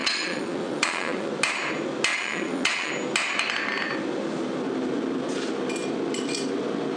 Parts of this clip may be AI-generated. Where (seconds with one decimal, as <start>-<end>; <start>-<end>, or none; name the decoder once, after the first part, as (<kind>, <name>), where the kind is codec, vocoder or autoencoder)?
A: 0.0-1.3 (vocoder, Vocos); 2.1-2.9